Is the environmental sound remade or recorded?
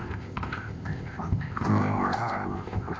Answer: remade